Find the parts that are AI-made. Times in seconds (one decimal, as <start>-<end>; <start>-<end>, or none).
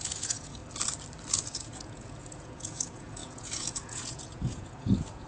0.0-0.6; 1.3-5.3